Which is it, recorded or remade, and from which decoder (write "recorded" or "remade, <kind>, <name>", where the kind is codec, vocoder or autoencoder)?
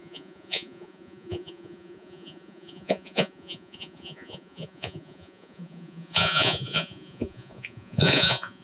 remade, vocoder, Vocos